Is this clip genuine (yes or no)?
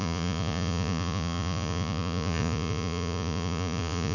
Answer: no